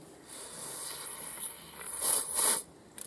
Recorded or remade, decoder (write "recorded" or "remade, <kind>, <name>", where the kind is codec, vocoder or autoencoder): recorded